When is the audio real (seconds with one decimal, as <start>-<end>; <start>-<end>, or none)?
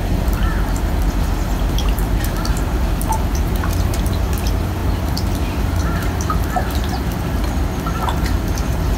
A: 0.0-9.0